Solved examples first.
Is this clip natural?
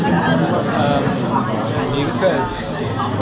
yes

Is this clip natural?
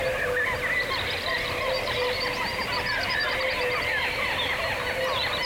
yes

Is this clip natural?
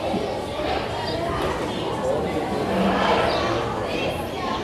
yes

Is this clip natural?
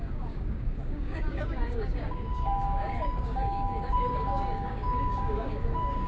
no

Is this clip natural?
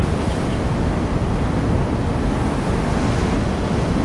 yes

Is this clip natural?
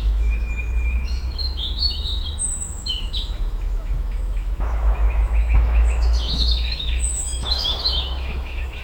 no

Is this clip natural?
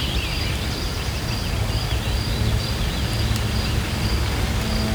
yes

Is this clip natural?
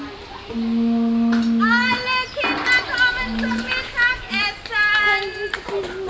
yes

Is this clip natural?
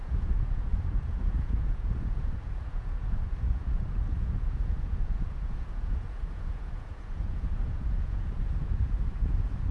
no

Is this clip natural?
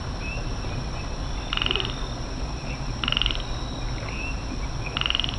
yes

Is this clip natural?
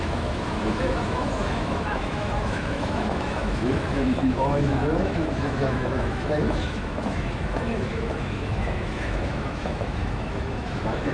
no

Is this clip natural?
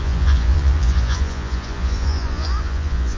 no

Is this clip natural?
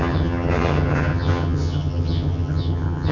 no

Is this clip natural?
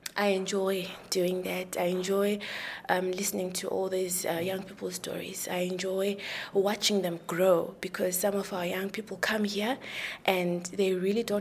yes